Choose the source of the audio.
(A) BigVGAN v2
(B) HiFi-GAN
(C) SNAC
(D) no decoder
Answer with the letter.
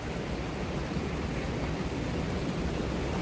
D